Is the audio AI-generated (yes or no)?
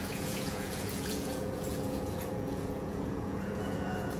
yes